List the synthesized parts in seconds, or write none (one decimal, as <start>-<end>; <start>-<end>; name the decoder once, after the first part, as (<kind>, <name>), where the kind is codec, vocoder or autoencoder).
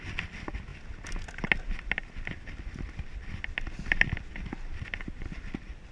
none